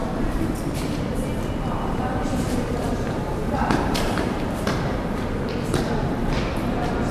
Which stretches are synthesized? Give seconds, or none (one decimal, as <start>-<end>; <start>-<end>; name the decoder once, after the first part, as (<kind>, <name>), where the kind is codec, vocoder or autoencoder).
0.0-7.1 (vocoder, BigVGAN v2)